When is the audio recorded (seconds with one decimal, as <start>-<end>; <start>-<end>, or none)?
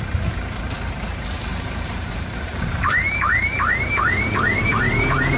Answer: 0.0-1.5; 4.7-5.4